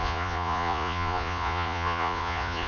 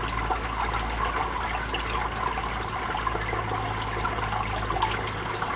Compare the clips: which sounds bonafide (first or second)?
second